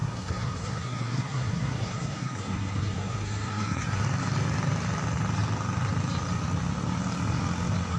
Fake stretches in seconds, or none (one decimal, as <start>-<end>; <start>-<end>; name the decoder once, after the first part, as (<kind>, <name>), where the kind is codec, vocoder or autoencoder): 0.0-4.0 (codec, SNAC)